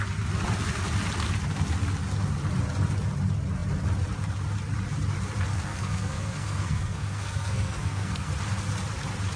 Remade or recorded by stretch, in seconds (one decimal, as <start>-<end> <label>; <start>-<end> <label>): 0.0-5.5 recorded; 5.5-8.3 remade; 8.3-9.4 recorded